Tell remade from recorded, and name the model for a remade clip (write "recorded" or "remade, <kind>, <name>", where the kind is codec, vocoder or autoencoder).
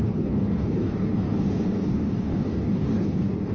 remade, codec, DAC